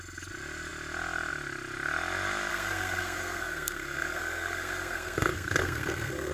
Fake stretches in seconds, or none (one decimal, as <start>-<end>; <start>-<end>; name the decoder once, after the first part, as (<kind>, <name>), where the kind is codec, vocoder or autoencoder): 2.5-6.3 (codec, SNAC)

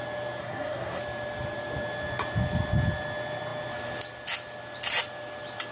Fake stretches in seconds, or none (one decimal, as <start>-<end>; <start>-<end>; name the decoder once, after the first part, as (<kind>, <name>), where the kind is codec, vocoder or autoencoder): 0.4-1.0 (codec, SNAC)

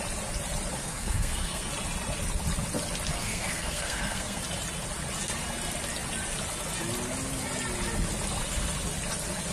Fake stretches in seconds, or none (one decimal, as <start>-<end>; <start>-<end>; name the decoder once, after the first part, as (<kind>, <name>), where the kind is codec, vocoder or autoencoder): 0.8-1.7 (codec, SNAC); 3.1-4.4

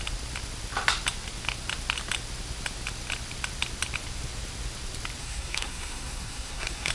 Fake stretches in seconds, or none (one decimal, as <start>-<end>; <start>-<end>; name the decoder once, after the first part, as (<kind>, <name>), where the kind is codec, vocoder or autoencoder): 5.2-6.9 (codec, SNAC)

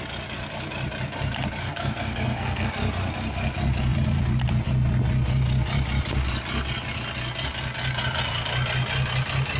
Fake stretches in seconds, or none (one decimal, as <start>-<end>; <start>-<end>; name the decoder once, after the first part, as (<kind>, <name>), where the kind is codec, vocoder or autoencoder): 1.6-2.7 (codec, SNAC)